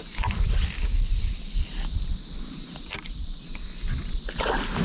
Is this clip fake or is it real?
real